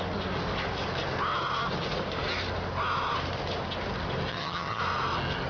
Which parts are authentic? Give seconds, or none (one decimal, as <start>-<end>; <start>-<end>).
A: 0.0-4.3; 4.8-5.5